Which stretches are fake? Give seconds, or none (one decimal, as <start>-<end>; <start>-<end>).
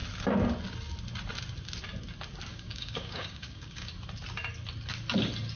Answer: 2.5-3.9